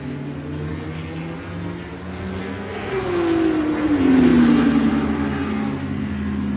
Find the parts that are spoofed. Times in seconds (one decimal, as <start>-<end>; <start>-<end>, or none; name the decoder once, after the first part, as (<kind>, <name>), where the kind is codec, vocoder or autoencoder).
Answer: 2.4-2.9 (codec, SNAC)